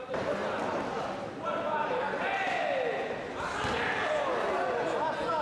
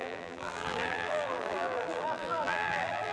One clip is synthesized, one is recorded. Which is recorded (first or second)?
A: first